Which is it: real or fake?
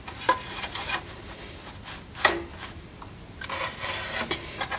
real